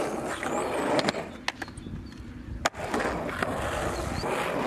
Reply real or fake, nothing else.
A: real